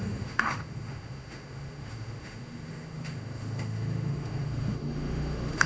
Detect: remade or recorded remade